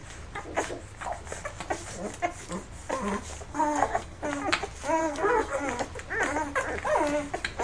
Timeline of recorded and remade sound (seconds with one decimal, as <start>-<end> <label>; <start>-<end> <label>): 0.0-3.5 recorded; 3.5-4.2 remade; 4.2-5.0 recorded; 5.0-5.6 remade; 5.6-7.6 recorded